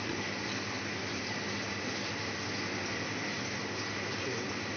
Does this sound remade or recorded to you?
recorded